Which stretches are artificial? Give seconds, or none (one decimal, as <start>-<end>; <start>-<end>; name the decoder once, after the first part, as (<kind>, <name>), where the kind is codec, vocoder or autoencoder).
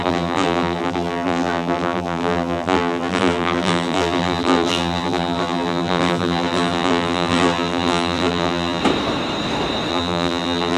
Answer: 0.0-8.8 (vocoder, BigVGAN v2); 9.9-10.8